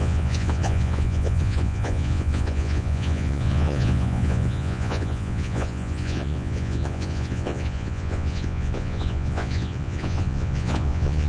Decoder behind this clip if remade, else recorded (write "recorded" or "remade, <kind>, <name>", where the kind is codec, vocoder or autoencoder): remade, vocoder, Vocos